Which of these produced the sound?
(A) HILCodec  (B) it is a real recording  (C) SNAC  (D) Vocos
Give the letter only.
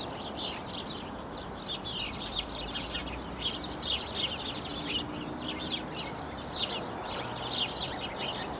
B